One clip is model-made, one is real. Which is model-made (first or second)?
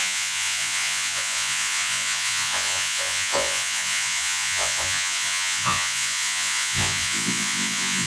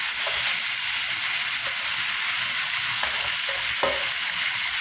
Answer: first